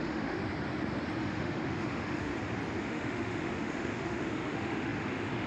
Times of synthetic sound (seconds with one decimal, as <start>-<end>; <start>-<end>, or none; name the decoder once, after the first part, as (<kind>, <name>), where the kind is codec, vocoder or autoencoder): 0.0-0.4 (autoencoder, DAC-VAE); 1.2-2.3; 2.8-5.5

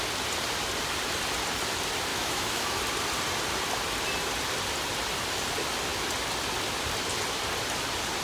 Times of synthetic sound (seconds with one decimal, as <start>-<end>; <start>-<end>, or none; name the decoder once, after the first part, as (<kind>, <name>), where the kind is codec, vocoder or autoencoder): 2.1-2.8 (autoencoder, DAC-VAE)

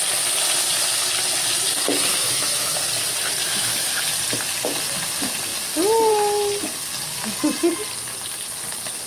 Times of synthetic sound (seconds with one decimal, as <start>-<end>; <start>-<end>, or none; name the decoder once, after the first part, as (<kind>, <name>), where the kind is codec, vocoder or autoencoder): 2.1-2.8 (autoencoder, DAC-VAE); 3.4-4.0